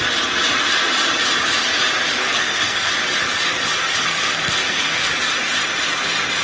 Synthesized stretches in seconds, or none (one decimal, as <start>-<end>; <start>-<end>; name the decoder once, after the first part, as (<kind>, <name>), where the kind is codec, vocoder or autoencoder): 2.2-2.9 (codec, SNAC); 4.0-5.1